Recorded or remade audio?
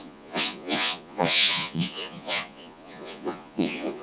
remade